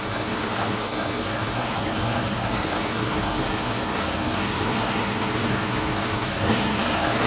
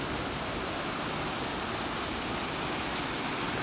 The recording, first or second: second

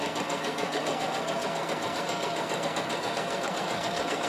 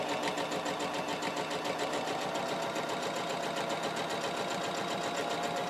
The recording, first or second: second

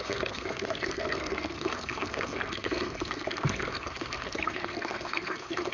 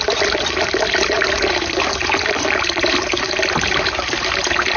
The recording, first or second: second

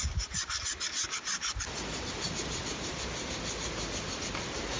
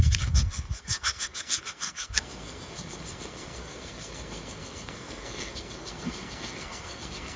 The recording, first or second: first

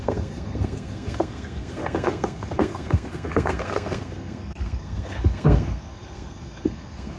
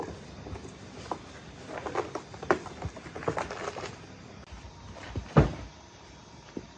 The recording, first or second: second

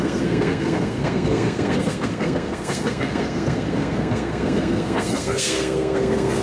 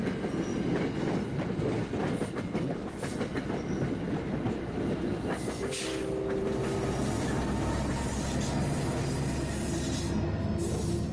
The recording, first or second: second